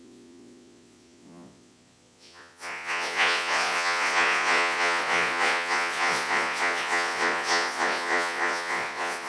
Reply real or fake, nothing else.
fake